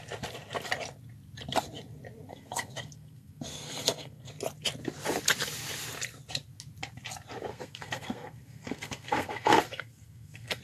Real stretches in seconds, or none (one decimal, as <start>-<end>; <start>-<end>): 0.0-2.3; 4.3-7.5